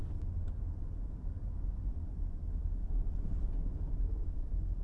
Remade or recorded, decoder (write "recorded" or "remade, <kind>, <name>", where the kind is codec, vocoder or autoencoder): recorded